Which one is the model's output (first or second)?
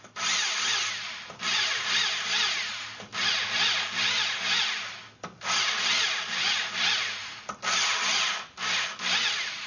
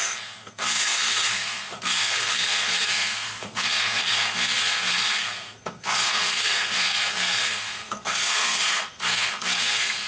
second